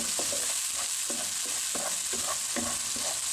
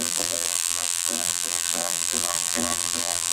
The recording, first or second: first